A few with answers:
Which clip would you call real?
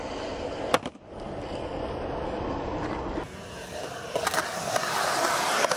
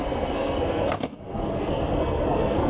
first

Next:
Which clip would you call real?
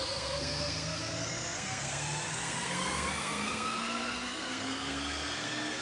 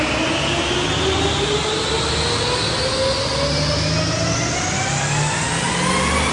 second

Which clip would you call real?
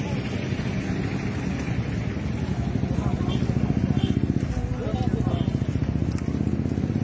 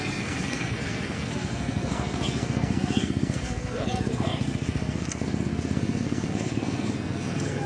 first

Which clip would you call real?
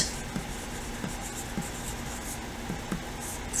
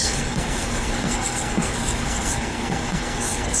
first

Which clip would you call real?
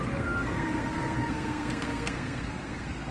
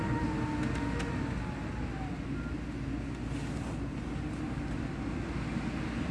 second